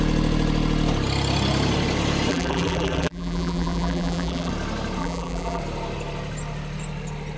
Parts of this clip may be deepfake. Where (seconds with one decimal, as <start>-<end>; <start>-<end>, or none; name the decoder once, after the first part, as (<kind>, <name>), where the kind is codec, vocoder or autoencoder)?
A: 2.3-4.5 (vocoder, BigVGAN v2); 5.0-5.6